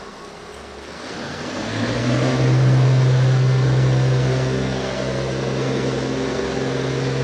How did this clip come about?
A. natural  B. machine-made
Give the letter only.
B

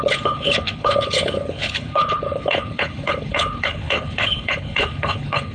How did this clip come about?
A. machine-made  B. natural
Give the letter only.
A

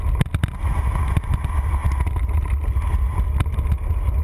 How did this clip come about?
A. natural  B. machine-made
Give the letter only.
A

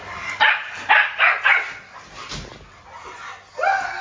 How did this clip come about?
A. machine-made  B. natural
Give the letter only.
B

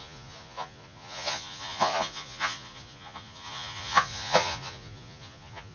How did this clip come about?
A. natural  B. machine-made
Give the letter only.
B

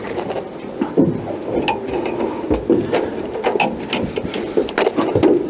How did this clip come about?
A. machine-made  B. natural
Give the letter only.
B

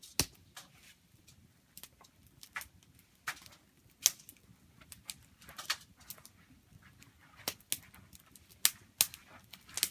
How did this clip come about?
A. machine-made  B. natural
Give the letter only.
B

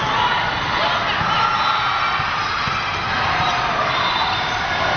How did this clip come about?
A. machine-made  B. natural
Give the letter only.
B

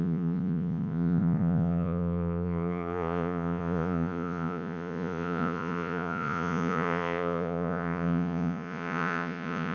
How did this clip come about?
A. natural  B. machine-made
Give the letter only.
B